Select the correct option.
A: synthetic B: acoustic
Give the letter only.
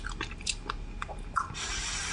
B